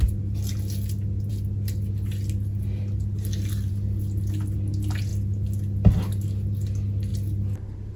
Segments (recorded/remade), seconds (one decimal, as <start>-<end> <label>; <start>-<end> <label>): 0.0-8.0 recorded